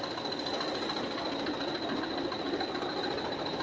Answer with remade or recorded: recorded